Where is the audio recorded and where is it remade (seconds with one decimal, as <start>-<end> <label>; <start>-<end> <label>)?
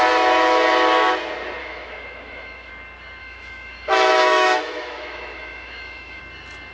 0.0-1.6 recorded; 1.6-2.7 remade; 2.7-3.2 recorded; 3.2-6.2 remade; 6.2-6.7 recorded